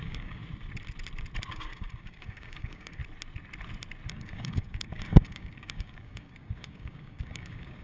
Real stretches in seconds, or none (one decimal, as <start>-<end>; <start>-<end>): 0.4-1.5; 3.0-4.1